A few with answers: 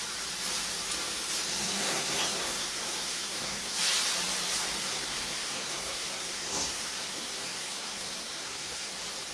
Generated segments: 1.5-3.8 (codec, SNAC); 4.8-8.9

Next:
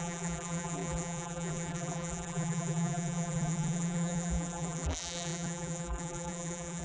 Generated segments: 0.0-6.8 (vocoder, BigVGAN v2)

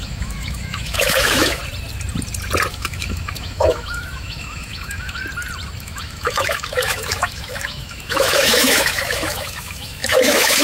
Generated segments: 0.0-1.6 (autoencoder, DAC-VAE); 2.7-5.2; 5.8-10.6

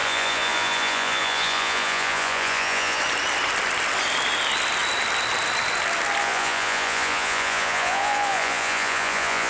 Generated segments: 0.0-3.0 (vocoder, Vocos); 6.2-9.5

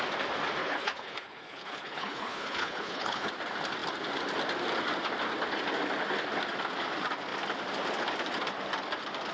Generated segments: 0.6-3.3 (codec, HILCodec)

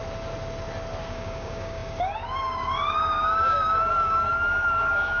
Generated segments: 1.0-5.2 (codec, DAC)

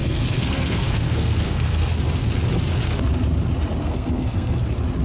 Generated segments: 0.0-1.9 (codec, SNAC); 3.8-4.6

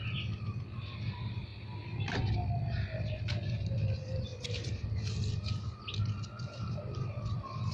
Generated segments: 4.3-5.0 (vocoder, BigVGAN v2)